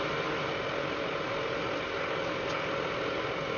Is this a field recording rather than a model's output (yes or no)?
yes